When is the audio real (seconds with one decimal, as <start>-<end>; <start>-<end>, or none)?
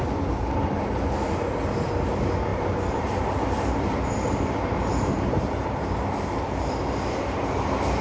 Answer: 0.0-2.5; 6.7-8.0